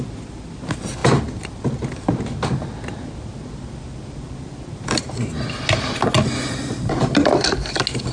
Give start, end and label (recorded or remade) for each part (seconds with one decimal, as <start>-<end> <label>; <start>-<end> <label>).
0.0-8.1 recorded